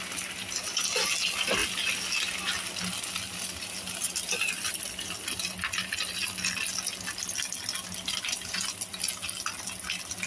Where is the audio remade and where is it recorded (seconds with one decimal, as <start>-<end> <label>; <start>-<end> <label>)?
0.0-10.3 recorded